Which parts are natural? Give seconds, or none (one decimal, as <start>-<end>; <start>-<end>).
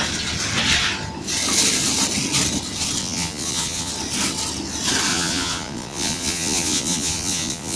0.0-3.0; 3.9-5.1